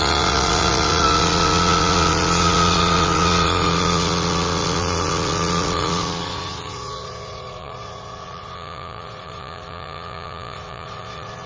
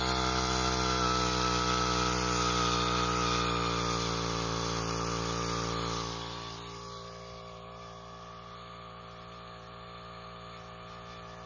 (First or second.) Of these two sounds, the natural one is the second